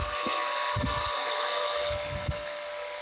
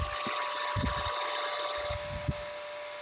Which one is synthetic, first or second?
first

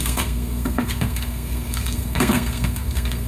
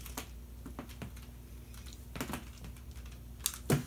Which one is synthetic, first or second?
first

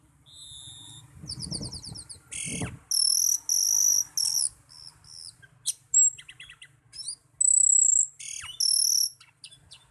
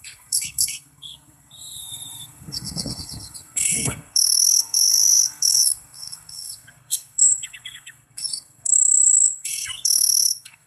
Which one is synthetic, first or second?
second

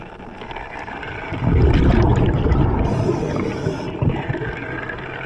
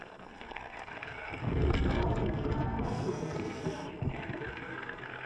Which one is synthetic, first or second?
second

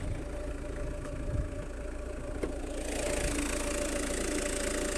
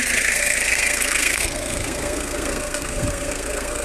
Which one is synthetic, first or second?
second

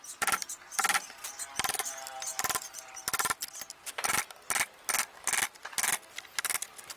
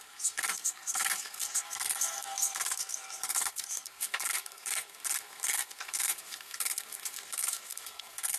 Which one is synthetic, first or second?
second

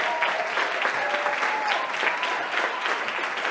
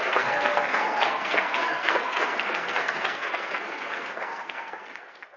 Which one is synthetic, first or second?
second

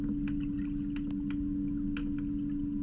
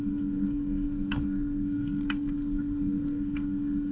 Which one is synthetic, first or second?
second